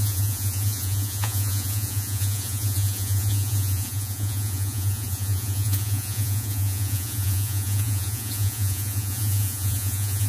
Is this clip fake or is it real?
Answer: fake